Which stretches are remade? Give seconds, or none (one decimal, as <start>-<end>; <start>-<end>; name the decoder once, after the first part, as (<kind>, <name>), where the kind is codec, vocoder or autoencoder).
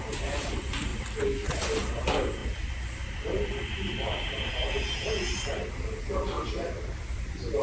none